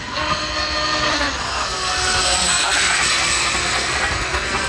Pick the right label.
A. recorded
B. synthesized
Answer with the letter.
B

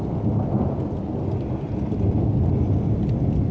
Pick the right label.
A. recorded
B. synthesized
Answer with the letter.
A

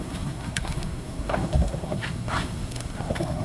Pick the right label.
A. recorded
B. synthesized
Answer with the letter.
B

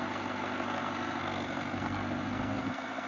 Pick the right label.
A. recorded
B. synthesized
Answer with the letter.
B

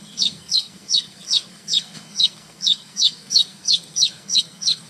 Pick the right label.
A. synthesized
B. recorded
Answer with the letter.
A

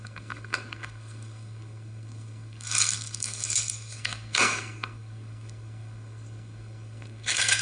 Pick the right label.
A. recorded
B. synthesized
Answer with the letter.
B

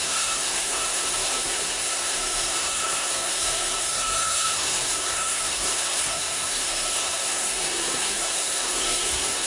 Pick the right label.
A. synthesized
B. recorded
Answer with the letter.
A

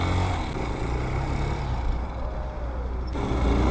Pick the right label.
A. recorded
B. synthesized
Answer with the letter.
A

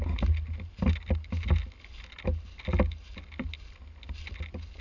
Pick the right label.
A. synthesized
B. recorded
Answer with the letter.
B